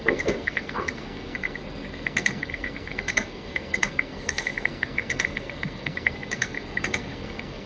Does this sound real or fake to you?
fake